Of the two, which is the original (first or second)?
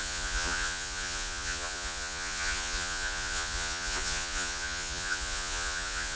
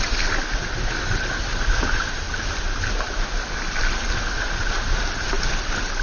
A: second